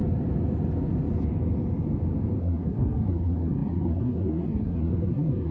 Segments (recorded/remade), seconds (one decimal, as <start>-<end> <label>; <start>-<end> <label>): 0.0-2.4 recorded; 2.4-5.5 remade